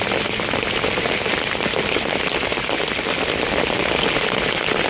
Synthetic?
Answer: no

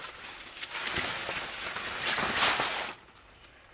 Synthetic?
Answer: no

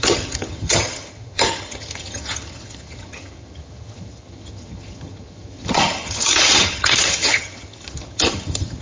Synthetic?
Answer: yes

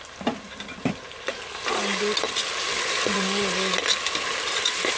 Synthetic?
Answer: no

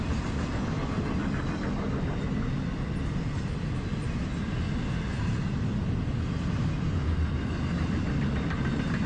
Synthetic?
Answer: no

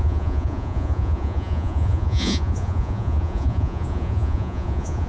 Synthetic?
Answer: yes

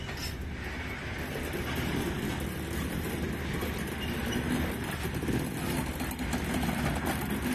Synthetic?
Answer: no